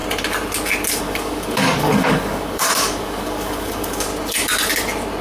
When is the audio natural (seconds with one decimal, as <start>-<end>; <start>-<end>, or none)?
0.0-1.0; 4.1-5.2